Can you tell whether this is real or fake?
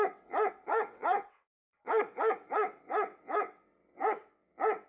fake